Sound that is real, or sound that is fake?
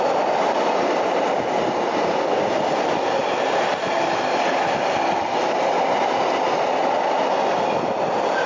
real